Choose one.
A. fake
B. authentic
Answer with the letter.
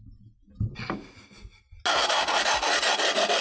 B